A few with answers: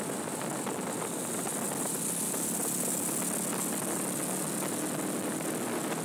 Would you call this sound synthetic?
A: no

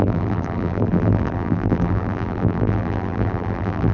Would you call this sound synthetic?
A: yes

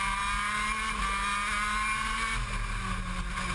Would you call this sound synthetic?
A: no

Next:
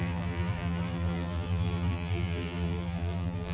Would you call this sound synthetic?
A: yes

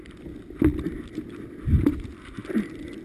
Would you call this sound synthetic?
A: no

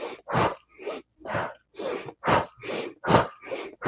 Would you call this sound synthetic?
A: yes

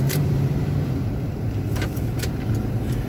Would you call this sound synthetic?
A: yes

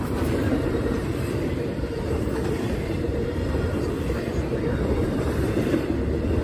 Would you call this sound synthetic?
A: yes